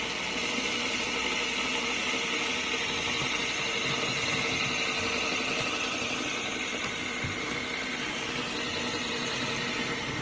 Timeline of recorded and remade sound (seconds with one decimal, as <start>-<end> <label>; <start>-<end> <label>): 0.0-10.2 recorded